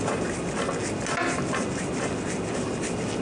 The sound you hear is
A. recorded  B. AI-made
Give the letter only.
A